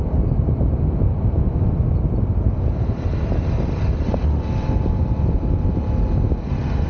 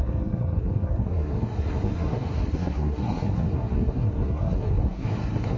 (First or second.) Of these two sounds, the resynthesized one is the second